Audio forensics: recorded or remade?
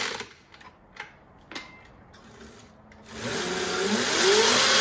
recorded